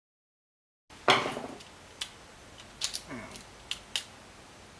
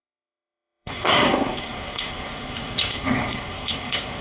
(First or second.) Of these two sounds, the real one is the first